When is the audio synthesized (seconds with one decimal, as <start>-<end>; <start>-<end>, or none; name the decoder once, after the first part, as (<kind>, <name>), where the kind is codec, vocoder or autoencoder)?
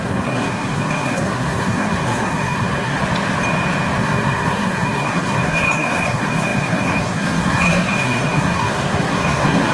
0.0-3.0 (codec, SNAC); 4.0-9.7